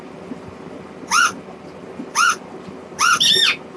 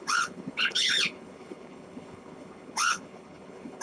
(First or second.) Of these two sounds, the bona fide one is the first